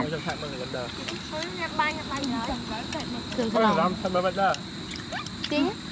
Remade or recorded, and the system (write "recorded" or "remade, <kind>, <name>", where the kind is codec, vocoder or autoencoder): recorded